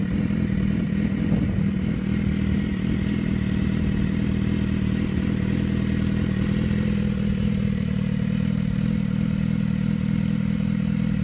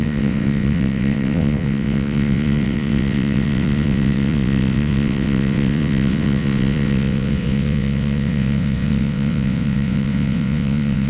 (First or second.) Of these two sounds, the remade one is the second